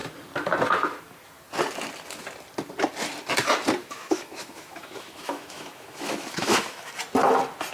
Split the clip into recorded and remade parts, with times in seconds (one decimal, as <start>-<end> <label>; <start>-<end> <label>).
0.0-3.8 recorded; 3.8-6.9 remade; 6.9-7.7 recorded